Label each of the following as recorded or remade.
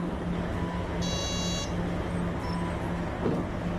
recorded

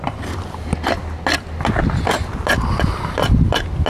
recorded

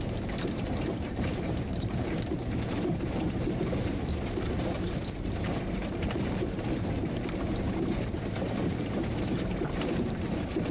remade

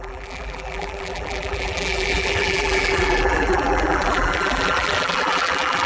remade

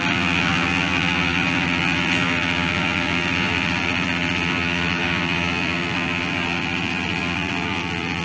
remade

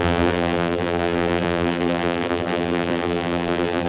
remade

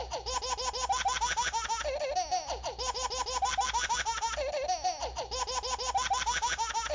recorded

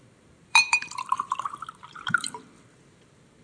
remade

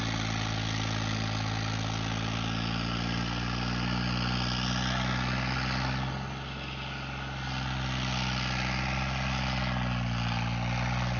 recorded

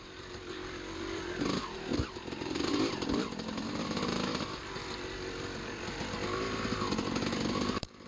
remade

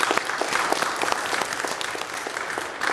remade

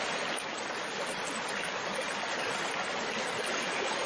recorded